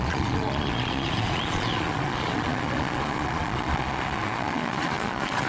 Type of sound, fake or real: fake